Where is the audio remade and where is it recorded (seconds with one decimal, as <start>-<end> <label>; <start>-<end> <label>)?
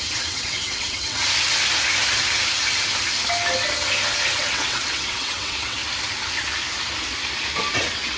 0.0-1.2 remade; 1.2-4.4 recorded; 4.4-5.8 remade; 5.8-7.7 recorded; 7.7-8.2 remade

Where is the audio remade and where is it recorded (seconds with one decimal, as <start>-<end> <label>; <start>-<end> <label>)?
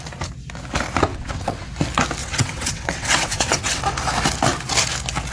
0.0-1.1 recorded; 1.1-1.7 remade; 1.7-2.2 recorded; 2.2-3.8 remade; 3.8-5.3 recorded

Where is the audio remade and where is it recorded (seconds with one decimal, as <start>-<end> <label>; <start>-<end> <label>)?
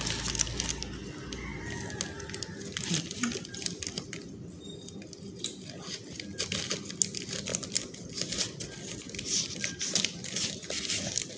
0.0-11.4 recorded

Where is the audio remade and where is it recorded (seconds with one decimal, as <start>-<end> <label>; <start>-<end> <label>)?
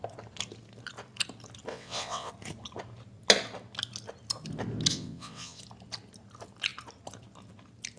0.0-1.7 recorded; 1.7-2.3 remade; 2.3-4.9 recorded; 4.9-5.6 remade; 5.6-8.0 recorded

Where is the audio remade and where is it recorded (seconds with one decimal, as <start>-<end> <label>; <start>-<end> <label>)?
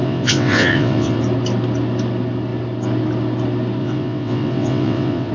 0.0-1.2 remade; 1.2-3.8 recorded; 3.8-5.3 remade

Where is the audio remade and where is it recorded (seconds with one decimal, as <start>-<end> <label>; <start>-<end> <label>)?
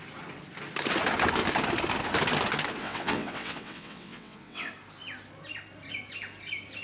0.0-2.8 recorded; 2.8-4.7 remade; 4.7-6.8 recorded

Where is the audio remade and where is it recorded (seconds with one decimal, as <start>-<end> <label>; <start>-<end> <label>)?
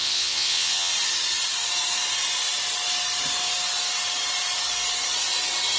0.0-0.9 remade; 0.9-5.8 recorded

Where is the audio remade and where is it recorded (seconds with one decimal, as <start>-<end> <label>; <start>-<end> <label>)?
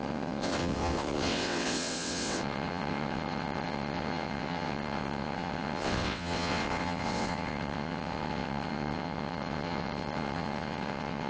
0.0-11.3 remade